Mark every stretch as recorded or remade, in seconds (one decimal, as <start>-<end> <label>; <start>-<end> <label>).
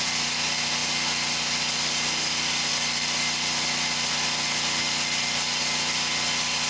0.0-6.7 recorded